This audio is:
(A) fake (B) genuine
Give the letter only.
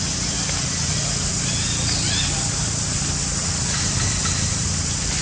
B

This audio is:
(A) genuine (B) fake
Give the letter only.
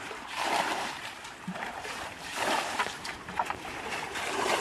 B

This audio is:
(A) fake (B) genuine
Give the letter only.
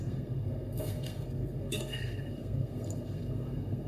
A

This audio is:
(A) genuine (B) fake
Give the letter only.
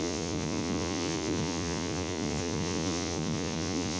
B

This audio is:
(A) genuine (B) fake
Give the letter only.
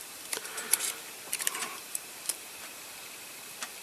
B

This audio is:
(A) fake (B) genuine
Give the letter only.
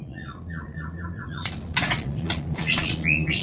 A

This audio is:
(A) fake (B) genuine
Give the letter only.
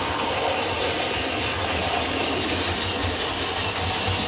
B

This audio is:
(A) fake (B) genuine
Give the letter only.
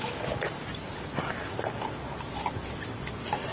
B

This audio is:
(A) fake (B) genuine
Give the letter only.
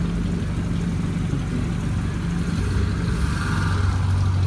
B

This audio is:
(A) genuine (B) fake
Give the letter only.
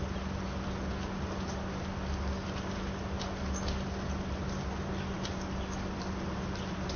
A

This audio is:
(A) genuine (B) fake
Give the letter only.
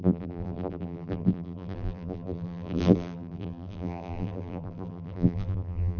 B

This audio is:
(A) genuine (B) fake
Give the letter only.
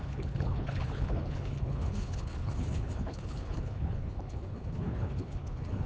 B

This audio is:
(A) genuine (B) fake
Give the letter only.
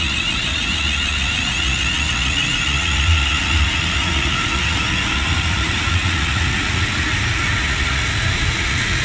B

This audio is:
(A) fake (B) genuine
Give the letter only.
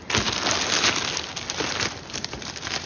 B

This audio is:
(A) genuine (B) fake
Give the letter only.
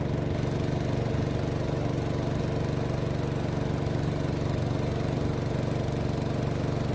A